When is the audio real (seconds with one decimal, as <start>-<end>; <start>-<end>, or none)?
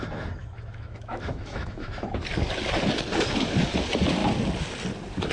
0.0-0.4; 1.9-5.3